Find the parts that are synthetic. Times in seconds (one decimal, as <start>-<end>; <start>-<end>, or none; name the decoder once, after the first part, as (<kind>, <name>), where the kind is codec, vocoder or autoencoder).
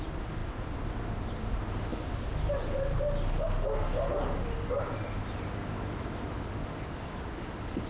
none